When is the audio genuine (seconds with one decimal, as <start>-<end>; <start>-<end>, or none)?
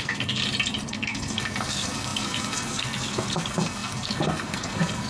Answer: 0.4-0.9